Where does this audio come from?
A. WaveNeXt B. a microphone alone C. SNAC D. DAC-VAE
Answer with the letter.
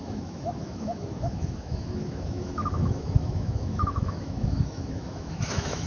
D